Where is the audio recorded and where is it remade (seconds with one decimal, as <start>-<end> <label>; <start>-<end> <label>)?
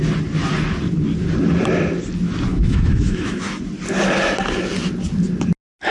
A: 0.0-2.5 recorded; 2.5-3.6 remade; 3.6-5.9 recorded